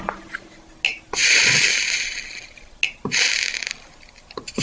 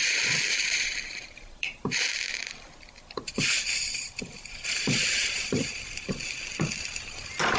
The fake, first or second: second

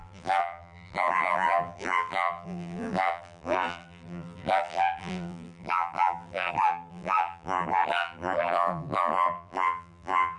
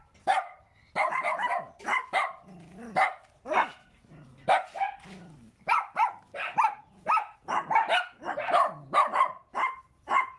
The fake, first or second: first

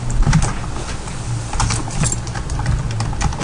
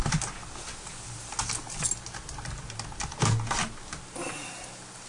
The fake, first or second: first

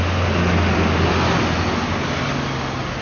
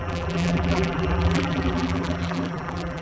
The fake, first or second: second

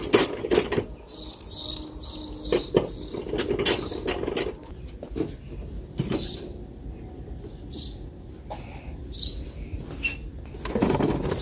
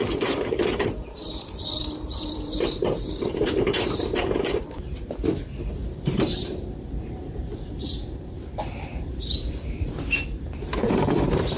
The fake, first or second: second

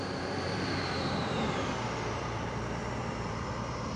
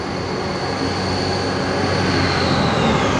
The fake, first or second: first